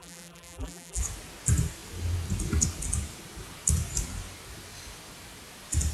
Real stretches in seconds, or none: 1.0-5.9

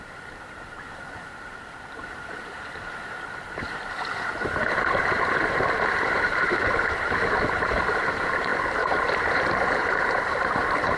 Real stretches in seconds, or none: none

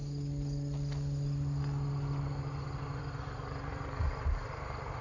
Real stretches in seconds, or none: 0.0-3.7

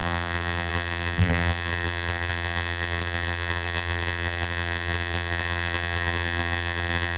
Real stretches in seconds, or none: none

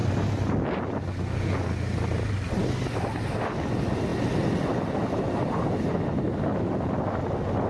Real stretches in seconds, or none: 0.0-7.7

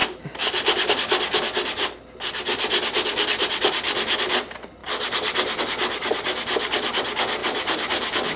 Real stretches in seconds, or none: 0.9-7.4